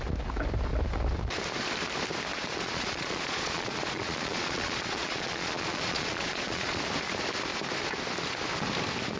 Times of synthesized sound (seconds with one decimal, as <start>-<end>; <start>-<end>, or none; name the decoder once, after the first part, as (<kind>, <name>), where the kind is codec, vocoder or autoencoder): 2.3-6.8 (vocoder, Vocos)